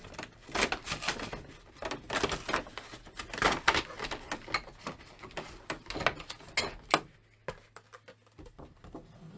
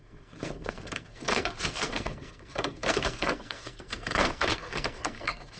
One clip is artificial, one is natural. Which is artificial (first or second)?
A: second